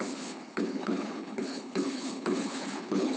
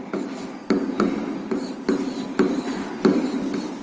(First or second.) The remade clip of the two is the first